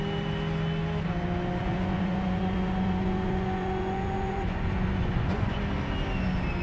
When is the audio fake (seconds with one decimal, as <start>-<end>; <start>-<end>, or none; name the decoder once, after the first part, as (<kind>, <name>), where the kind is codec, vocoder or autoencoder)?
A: 1.6-5.6 (vocoder, Vocos)